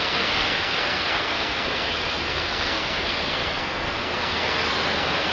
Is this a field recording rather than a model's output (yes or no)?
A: no